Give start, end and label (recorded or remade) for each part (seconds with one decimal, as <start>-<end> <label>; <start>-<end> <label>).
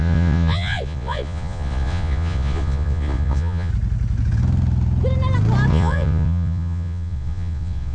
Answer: 0.0-3.7 remade; 3.7-5.7 recorded; 5.7-7.9 remade